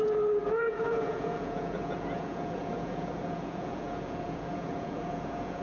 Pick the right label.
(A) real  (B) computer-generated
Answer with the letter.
B